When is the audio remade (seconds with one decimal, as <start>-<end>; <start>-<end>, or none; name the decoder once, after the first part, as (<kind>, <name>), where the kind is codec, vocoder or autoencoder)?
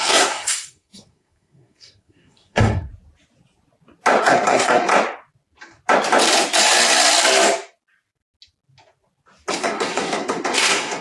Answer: 0.0-2.9 (codec, SNAC); 4.2-4.9; 9.5-11.0